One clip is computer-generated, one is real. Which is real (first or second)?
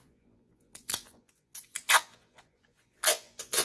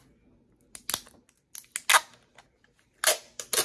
second